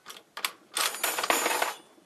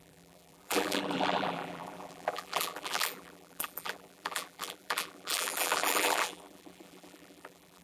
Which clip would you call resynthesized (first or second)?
second